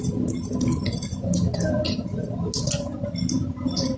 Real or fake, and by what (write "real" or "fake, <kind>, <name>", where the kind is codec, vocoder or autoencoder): real